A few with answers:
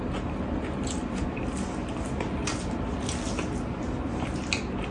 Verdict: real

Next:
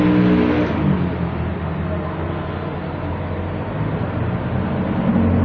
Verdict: real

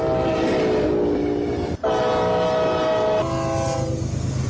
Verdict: real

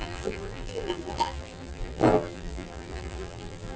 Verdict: fake